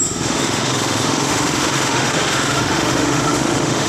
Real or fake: fake